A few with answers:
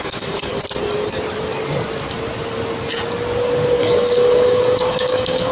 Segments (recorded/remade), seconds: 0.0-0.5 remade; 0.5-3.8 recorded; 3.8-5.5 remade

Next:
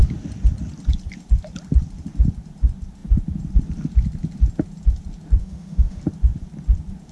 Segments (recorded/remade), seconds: 0.0-5.4 recorded; 5.4-6.0 remade; 6.0-7.1 recorded

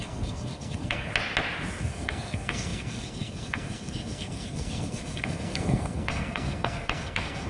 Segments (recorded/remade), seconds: 0.0-1.1 remade; 1.1-1.8 recorded; 1.8-7.5 remade

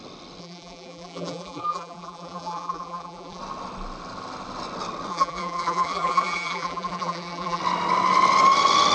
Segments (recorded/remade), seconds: 0.0-0.4 recorded; 0.4-3.4 remade; 3.4-5.1 recorded; 5.1-7.6 remade; 7.6-8.9 recorded

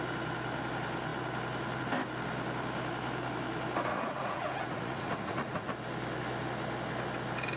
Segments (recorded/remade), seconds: 0.0-3.9 recorded; 3.9-5.7 remade; 5.7-7.6 recorded